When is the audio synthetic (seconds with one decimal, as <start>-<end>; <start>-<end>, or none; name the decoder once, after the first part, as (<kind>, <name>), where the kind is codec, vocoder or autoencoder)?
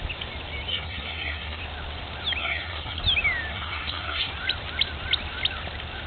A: 0.7-1.6 (codec, SNAC); 2.4-3.0; 3.5-4.3